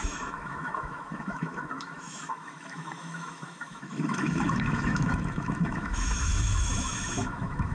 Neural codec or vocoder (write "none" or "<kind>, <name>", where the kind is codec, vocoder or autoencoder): autoencoder, DAC-VAE